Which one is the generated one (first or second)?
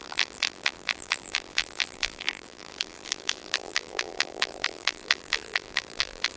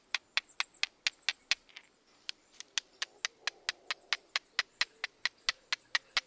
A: first